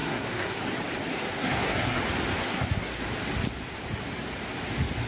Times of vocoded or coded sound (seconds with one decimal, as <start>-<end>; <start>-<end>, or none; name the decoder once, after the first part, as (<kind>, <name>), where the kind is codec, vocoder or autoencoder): 0.0-0.6 (codec, SNAC); 1.1-2.0; 2.4-3.0